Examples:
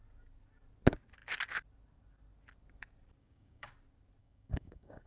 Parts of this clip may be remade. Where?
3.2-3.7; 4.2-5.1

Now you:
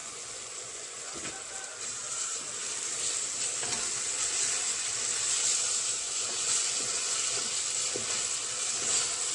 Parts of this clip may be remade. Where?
0.0-1.3; 5.9-7.2

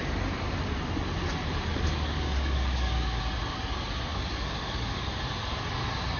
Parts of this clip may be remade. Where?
1.7-3.2; 4.1-5.0

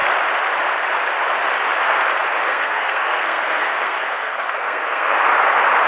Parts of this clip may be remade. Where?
2.4-5.2

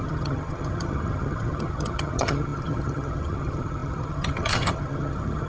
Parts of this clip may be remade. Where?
0.0-5.5

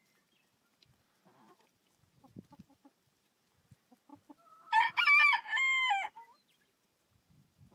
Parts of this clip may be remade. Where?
0.0-4.1; 4.8-7.7

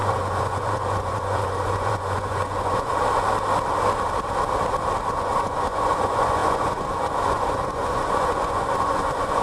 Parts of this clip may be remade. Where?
0.0-2.9; 5.1-9.4